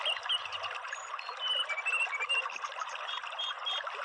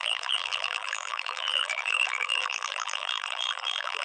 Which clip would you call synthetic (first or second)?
second